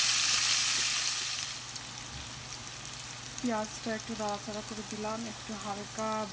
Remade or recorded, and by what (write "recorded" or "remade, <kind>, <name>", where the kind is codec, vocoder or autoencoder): recorded